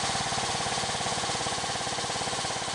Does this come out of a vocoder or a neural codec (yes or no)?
yes